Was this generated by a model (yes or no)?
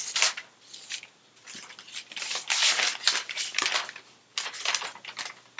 yes